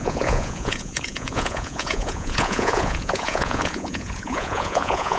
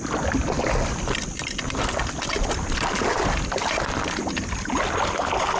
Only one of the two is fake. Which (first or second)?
first